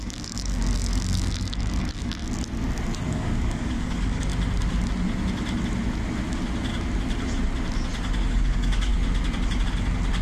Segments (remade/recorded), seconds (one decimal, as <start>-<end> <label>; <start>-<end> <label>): 0.0-2.2 remade; 2.2-3.1 recorded; 3.1-4.3 remade; 4.3-8.3 recorded; 8.3-8.9 remade; 8.9-10.2 recorded